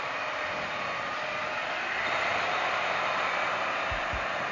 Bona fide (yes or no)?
no